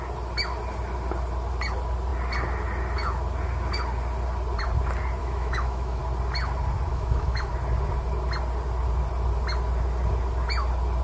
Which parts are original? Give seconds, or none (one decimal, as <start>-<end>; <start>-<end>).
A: 0.0-5.2; 6.0-6.9; 7.5-11.0